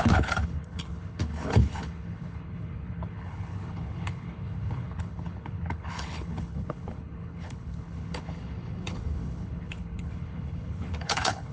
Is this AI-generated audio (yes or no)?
yes